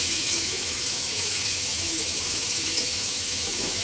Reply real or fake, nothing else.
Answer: fake